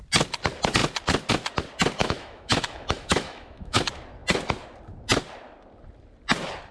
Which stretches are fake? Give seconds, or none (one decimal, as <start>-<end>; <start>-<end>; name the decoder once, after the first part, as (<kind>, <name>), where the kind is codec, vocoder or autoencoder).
2.0-3.8 (autoencoder, DAC-VAE)